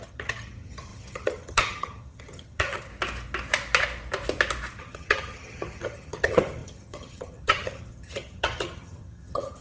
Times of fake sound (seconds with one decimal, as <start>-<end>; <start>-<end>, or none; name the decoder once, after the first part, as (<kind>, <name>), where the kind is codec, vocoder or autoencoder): 0.0-2.9 (vocoder, HiFi-GAN); 4.8-9.6